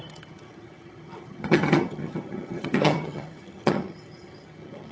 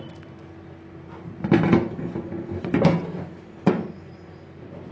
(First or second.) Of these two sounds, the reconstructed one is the first